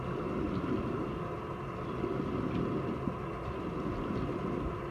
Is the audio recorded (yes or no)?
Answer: yes